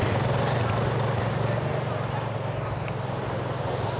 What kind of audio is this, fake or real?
real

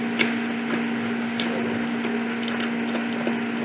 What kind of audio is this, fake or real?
real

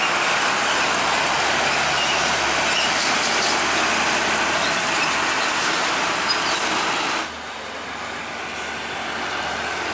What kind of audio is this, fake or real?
real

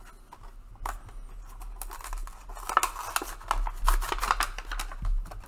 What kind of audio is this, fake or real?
real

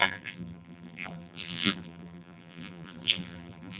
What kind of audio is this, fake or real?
fake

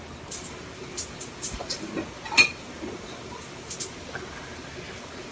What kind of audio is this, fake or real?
real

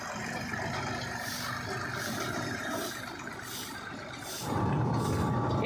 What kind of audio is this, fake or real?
real